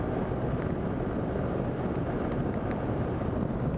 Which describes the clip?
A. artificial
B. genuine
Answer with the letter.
B